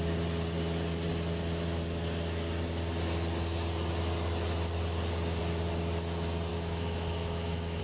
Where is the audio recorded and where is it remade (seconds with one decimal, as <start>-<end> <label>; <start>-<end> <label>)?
0.0-6.5 recorded; 6.5-7.8 remade